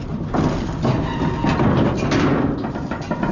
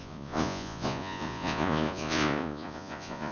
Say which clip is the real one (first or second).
first